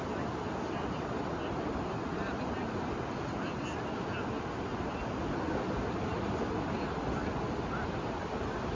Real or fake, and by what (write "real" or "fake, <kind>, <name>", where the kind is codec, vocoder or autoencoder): real